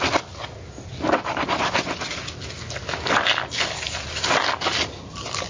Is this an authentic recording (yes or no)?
yes